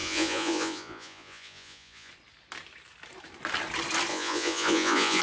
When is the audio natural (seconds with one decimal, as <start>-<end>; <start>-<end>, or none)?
2.1-4.1